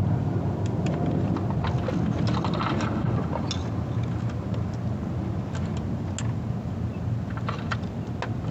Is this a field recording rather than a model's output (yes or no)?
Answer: yes